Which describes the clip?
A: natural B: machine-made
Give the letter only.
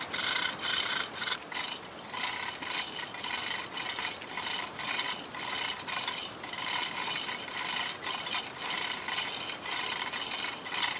A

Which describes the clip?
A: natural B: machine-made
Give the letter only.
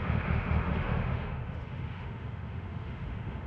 B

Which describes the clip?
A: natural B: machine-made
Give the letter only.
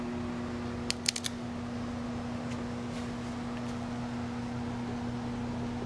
A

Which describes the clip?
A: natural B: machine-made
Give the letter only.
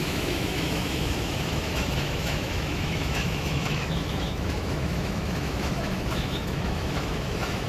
B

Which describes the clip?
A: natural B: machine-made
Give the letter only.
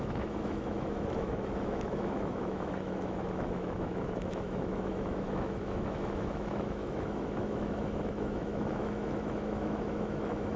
B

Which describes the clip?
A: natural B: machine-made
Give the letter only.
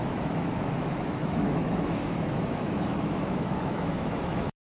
B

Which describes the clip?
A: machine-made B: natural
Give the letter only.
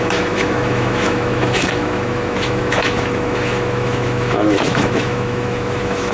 A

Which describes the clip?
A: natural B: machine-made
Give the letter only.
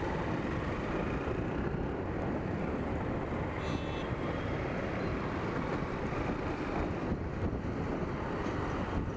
A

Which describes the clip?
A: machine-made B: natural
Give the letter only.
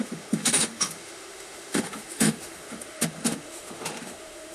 A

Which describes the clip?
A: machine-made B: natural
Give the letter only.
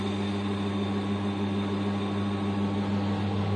B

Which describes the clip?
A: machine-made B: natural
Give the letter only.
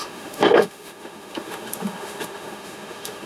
A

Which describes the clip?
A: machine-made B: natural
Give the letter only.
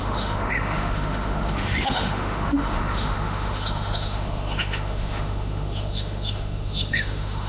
A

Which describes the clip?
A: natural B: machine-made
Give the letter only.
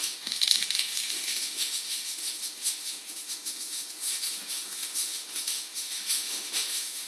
B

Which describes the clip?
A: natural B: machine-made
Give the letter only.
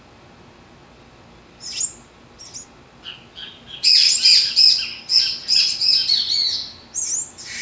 A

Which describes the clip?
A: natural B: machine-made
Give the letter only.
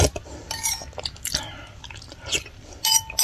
A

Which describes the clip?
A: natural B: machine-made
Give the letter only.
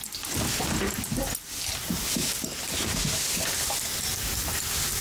A